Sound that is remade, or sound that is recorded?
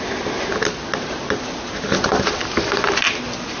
recorded